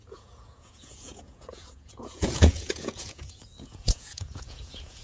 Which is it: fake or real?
fake